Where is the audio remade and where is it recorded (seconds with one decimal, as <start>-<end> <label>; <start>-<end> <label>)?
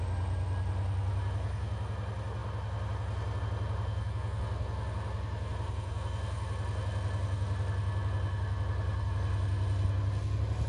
0.0-10.7 recorded